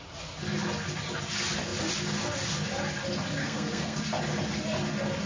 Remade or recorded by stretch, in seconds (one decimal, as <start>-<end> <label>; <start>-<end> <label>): 0.0-3.4 recorded; 3.4-4.0 remade; 4.0-5.3 recorded